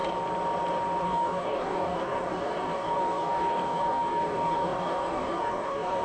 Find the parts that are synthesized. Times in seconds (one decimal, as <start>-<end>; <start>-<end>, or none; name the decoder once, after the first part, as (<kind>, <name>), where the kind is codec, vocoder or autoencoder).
1.0-6.0 (codec, DAC)